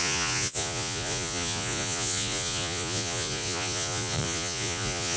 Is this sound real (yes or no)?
no